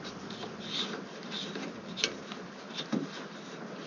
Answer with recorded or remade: recorded